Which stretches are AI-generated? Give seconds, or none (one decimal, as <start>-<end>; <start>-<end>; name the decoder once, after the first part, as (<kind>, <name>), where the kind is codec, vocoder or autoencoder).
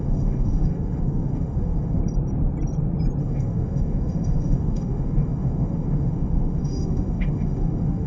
0.0-2.0 (autoencoder, DAC-VAE); 3.2-8.1